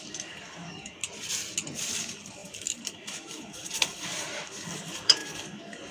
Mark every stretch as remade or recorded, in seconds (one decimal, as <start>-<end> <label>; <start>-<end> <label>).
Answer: 0.0-1.0 remade; 1.0-2.0 recorded; 2.0-5.9 remade